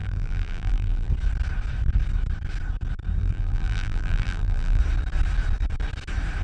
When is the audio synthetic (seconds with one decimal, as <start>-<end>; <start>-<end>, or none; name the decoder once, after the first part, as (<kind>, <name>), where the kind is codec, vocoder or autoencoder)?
0.0-1.1 (vocoder, BigVGAN v2); 3.2-4.8